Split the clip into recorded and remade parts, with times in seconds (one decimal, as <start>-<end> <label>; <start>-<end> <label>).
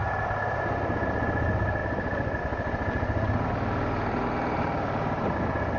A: 0.0-5.8 recorded